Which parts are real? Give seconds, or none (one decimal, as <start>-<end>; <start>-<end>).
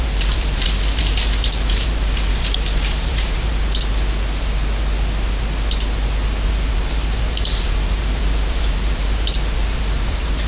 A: 3.5-6.7